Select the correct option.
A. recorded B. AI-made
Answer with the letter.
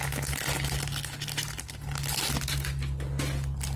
A